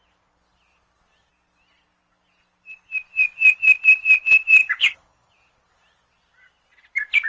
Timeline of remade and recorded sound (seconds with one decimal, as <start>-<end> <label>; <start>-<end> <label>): 0.0-4.6 recorded; 4.6-5.3 remade; 5.3-7.3 recorded